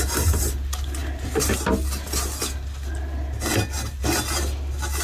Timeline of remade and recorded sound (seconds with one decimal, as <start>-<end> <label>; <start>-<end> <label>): 0.0-5.0 recorded